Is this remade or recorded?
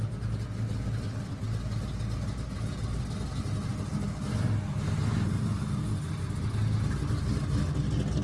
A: recorded